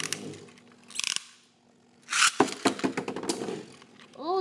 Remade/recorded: recorded